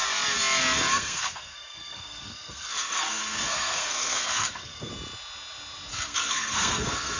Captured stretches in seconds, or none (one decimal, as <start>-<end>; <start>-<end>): 0.0-0.9; 4.9-5.9